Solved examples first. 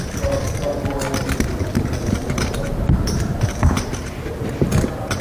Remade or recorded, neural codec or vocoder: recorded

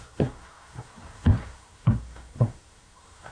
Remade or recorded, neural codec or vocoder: remade, codec, SNAC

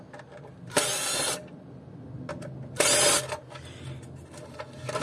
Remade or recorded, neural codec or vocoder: recorded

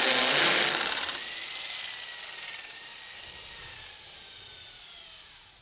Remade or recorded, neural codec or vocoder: recorded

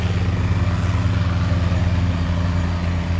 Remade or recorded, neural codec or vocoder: recorded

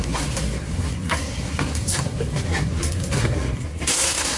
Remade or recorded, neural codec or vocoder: remade, codec, SNAC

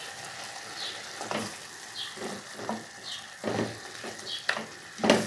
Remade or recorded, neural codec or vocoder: recorded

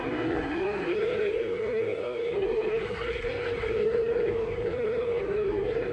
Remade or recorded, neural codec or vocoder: remade, codec, SNAC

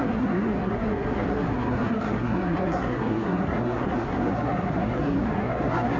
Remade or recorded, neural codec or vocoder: remade, codec, SNAC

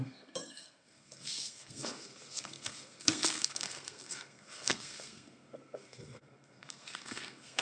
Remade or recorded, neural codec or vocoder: remade, codec, SNAC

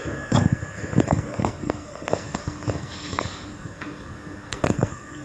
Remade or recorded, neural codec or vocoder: remade, codec, SNAC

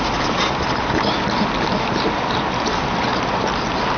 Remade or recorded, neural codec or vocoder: recorded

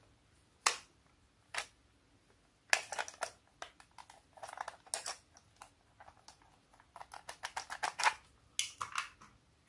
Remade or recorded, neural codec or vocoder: recorded